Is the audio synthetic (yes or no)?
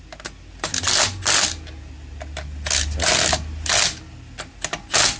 no